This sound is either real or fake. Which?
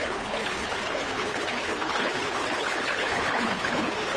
fake